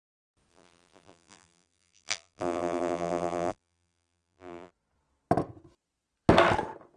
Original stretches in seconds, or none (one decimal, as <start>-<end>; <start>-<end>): 0.0-0.5; 4.7-7.0